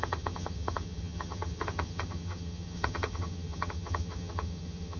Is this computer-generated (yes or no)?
yes